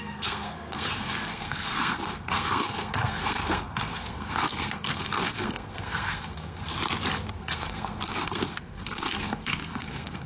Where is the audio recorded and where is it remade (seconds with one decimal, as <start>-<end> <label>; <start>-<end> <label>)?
0.0-6.7 remade; 6.7-7.3 recorded; 7.3-10.3 remade